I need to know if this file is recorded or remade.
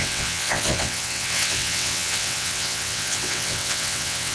remade